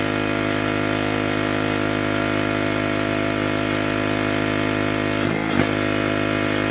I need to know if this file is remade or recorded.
recorded